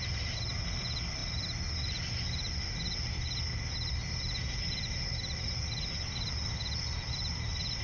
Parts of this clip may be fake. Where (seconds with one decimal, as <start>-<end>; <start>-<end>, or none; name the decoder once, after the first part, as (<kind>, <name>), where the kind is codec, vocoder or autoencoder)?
none